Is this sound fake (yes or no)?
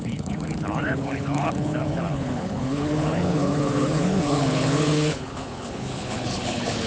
yes